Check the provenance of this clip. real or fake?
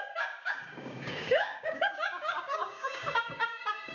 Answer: fake